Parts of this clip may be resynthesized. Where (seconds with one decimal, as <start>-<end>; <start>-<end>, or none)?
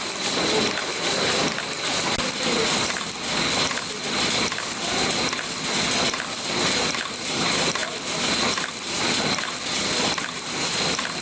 none